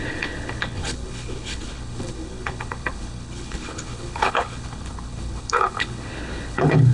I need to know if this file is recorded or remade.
remade